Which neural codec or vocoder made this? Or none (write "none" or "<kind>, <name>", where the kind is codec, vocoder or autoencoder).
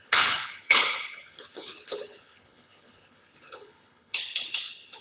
codec, HILCodec